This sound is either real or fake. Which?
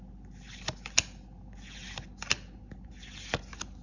real